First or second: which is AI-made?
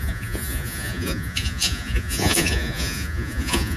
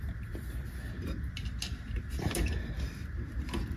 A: first